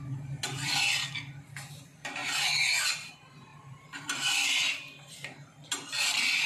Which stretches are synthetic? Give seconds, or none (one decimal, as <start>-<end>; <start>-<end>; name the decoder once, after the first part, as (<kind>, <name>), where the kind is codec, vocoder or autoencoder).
3.5-5.1 (vocoder, BigVGAN v2)